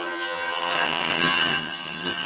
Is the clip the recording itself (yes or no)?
no